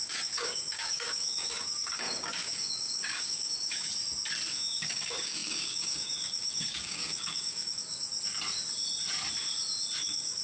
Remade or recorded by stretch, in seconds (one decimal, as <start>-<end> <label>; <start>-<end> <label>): 0.0-3.9 remade; 3.9-4.5 recorded; 4.5-8.1 remade; 8.1-10.0 recorded; 10.0-10.4 remade